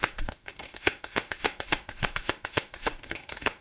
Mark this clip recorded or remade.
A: remade